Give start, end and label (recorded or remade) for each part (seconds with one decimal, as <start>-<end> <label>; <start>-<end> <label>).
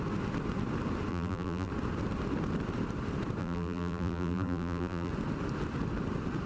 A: 0.0-1.1 recorded; 1.1-1.7 remade; 1.7-3.4 recorded; 3.4-5.1 remade; 5.1-6.5 recorded